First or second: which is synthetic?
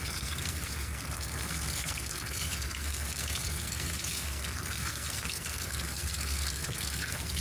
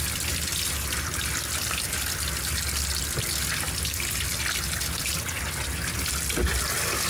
first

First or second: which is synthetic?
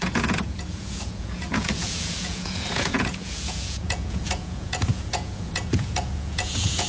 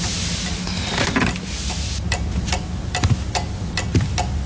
first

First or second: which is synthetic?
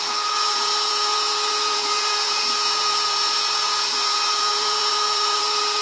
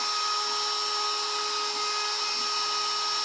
first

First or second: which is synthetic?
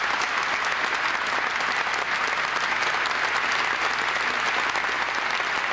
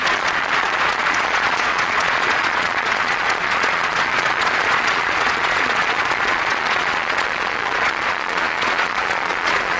second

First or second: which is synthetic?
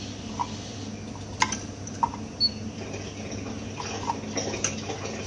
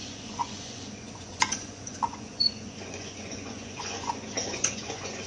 second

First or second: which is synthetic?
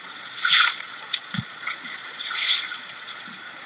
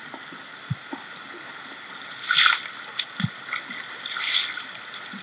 first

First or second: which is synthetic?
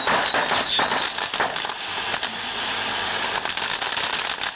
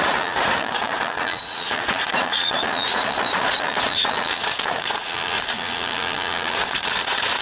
second